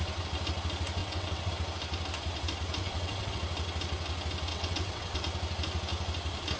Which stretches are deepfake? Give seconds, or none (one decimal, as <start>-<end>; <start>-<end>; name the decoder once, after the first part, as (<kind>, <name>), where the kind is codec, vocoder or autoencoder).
1.0-1.5 (vocoder, WaveNeXt); 2.8-3.4; 4.5-5.2